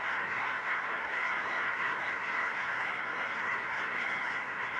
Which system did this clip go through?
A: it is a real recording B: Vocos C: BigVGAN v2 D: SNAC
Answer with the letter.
D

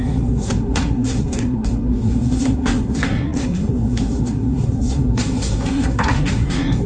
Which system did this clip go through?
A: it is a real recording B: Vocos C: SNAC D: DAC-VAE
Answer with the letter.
C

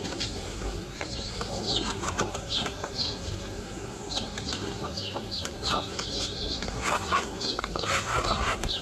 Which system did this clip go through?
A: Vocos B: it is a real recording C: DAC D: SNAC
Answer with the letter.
D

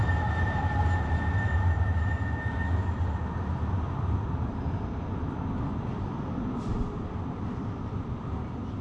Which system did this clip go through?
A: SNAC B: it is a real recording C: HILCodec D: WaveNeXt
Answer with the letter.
B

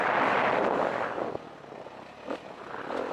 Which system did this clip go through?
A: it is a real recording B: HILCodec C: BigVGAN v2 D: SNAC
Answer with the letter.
A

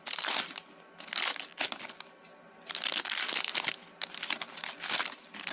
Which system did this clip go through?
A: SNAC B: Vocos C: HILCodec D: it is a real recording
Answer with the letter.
D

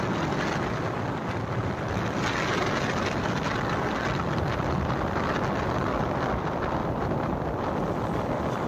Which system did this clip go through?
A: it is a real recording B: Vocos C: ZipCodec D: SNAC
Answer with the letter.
A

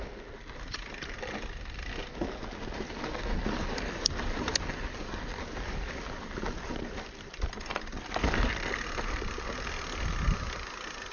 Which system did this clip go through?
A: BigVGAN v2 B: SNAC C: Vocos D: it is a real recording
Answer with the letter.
D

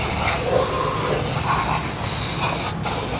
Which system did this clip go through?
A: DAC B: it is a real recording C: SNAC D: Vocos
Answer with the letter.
B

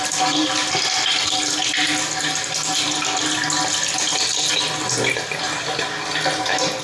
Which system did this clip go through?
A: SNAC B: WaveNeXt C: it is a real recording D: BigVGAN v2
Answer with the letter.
C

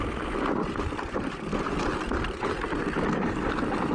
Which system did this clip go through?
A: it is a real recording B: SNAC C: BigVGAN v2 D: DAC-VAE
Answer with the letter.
A